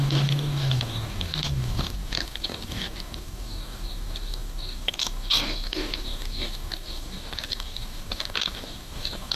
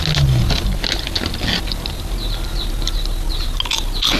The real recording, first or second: second